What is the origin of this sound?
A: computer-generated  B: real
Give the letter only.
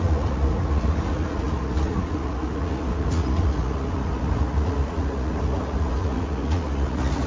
A